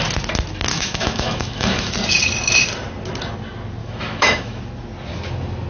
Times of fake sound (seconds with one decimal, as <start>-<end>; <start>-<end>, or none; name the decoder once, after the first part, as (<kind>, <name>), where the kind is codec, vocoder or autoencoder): 0.7-1.9 (autoencoder, DAC-VAE); 3.8-4.6